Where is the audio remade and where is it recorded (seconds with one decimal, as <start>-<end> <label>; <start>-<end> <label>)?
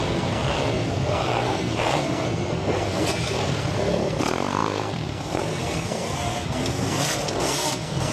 0.0-8.1 remade